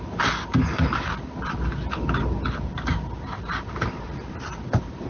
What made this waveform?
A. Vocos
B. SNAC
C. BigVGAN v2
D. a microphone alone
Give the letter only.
D